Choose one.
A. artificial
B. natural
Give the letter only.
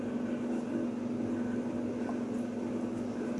B